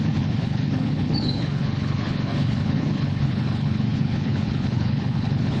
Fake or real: fake